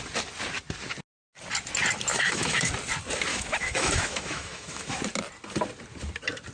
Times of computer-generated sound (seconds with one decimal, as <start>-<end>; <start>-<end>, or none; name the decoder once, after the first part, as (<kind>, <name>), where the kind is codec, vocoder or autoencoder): 2.1-2.7 (autoencoder, DAC-VAE); 3.3-5.0